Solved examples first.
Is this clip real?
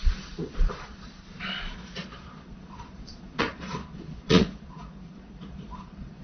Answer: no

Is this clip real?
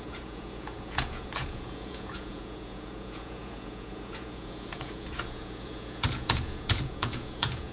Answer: no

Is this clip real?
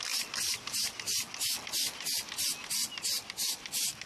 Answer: yes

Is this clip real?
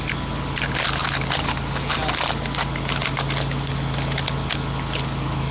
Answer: yes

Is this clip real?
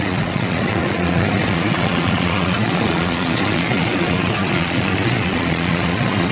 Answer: no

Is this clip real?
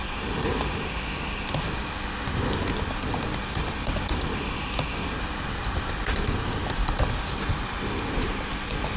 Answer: yes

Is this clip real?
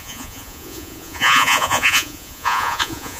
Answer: no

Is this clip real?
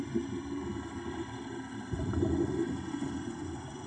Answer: yes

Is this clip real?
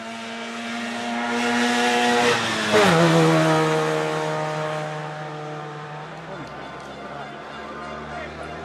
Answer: yes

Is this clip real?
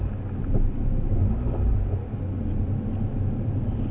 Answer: yes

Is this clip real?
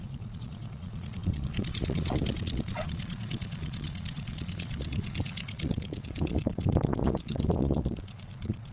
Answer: no